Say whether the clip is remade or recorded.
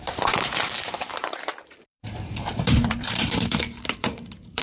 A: remade